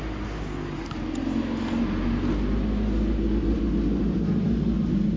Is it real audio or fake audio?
real